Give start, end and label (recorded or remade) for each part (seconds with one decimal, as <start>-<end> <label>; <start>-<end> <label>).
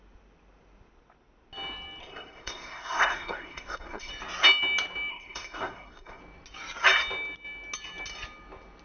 0.0-2.0 recorded; 2.0-4.1 remade; 4.1-5.1 recorded; 5.1-6.2 remade; 6.2-8.8 recorded